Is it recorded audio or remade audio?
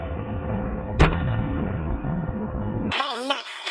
remade